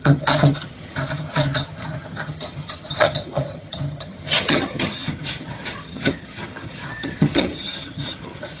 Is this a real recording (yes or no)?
no